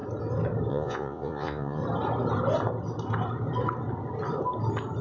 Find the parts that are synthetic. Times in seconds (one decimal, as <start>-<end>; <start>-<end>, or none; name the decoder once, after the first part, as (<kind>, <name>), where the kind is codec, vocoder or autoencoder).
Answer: 0.7-1.8 (vocoder, Vocos)